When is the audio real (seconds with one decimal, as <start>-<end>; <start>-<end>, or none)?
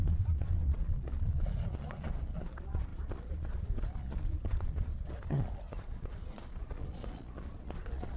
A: none